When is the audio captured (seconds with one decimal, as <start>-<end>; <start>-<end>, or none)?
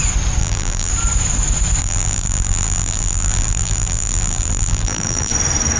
0.0-0.4; 0.9-1.8; 5.3-5.8